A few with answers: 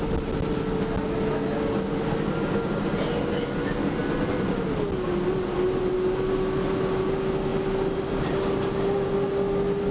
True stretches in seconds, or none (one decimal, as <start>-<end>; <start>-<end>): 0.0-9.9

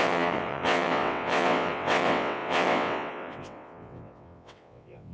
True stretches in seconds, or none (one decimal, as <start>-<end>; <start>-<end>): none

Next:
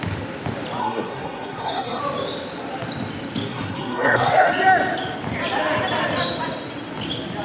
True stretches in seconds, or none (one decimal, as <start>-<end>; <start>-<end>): 0.0-0.8; 2.0-3.5; 4.5-7.4

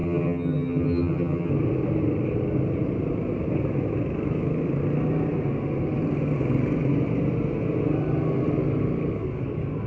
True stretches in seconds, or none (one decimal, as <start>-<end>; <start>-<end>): 1.5-9.9

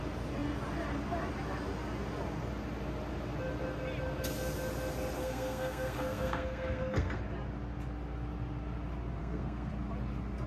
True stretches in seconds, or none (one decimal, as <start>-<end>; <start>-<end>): 0.0-5.2; 7.2-9.2; 9.7-10.5